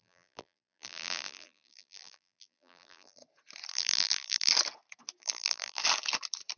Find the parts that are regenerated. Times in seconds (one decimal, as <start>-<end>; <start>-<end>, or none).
0.0-3.2; 3.7-4.5; 5.2-5.8